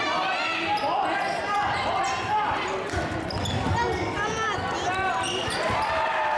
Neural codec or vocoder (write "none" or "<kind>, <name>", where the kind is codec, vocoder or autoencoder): none